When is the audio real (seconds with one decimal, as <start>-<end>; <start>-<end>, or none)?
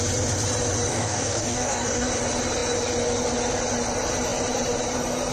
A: 0.0-0.9; 2.1-5.3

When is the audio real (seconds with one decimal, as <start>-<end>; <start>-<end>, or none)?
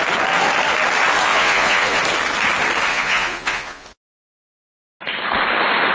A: 0.0-1.3; 2.0-2.9; 4.3-5.9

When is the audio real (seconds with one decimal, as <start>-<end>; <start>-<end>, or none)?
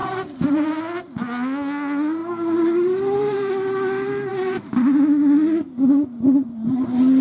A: 1.1-2.2; 3.5-4.3; 4.8-7.2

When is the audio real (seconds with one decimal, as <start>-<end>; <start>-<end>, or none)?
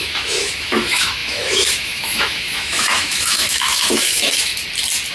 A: 4.5-5.1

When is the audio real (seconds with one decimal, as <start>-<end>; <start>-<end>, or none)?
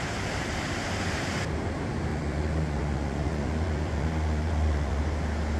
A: 0.0-2.1; 5.0-5.6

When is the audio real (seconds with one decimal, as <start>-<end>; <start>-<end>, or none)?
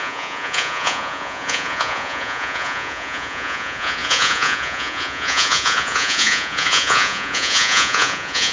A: none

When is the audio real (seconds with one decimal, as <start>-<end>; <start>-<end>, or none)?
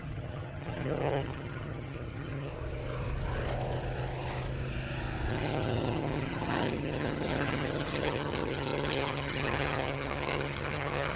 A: 2.5-5.3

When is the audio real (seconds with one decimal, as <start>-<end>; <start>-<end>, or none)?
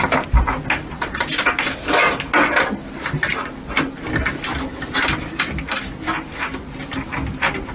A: 0.0-7.7